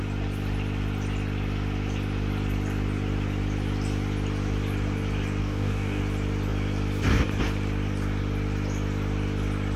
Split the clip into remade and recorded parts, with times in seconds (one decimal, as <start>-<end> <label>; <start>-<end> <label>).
0.0-5.4 recorded; 5.4-6.0 remade; 6.0-9.8 recorded